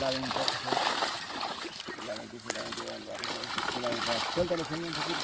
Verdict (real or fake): real